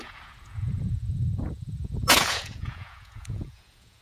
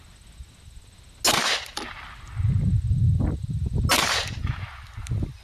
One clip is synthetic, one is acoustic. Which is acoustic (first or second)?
second